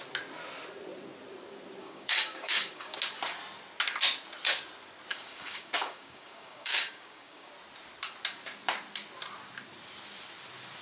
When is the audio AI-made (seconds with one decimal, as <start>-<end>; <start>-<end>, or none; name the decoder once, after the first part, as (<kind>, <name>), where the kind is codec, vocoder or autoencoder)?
1.8-3.0 (codec, DAC); 5.1-7.5